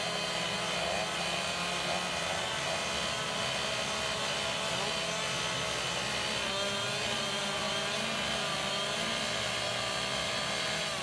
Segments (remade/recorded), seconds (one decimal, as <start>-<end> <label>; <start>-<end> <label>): 0.0-11.0 recorded